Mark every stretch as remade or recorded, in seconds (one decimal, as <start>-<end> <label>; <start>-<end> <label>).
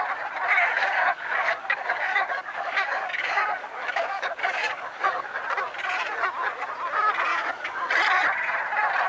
0.0-0.6 recorded; 0.6-5.4 remade; 5.4-7.3 recorded; 7.3-7.9 remade; 7.9-9.1 recorded